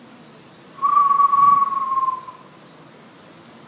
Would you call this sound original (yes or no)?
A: yes